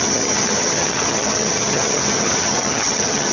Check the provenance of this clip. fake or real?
fake